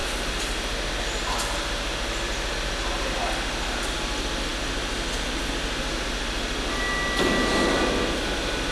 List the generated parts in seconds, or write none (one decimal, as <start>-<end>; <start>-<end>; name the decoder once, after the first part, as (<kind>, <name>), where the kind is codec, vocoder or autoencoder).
none